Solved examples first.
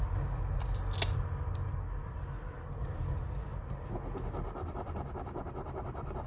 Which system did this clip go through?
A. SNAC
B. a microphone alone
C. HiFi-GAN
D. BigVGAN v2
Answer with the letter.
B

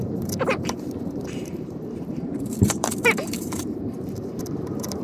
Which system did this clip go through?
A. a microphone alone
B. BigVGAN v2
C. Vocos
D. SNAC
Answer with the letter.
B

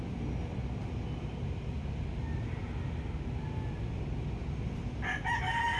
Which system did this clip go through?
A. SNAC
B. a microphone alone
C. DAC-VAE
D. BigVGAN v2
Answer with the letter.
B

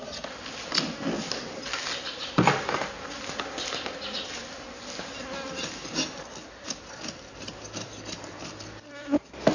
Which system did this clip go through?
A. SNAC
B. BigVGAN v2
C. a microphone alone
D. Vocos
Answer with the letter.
C